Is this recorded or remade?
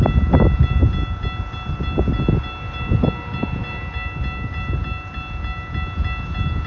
recorded